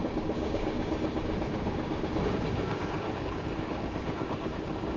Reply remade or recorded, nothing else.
remade